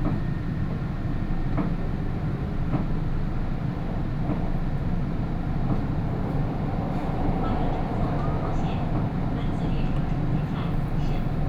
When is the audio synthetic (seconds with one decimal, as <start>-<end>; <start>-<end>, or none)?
none